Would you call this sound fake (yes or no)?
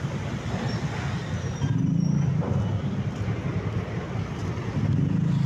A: no